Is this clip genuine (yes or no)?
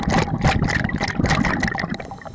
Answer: yes